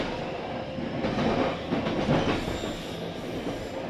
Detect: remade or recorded recorded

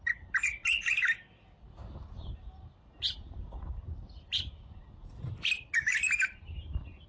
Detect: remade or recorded recorded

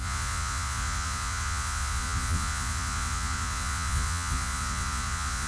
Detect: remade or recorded remade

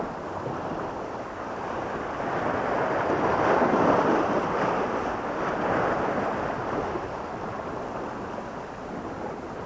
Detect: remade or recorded recorded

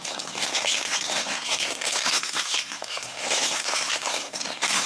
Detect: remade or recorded remade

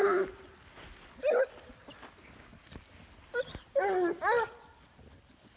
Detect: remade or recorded recorded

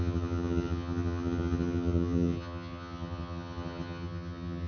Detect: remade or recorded remade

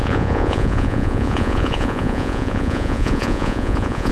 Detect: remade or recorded remade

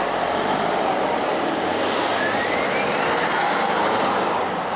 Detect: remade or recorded recorded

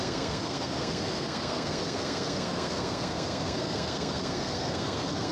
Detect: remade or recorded remade